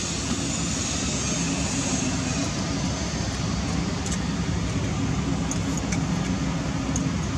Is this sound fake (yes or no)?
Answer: no